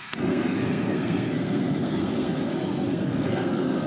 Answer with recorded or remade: remade